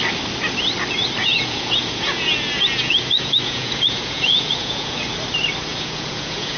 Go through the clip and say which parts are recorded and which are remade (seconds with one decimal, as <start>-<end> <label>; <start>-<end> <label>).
0.0-1.2 recorded; 1.2-5.1 remade; 5.1-5.7 recorded; 5.7-6.6 remade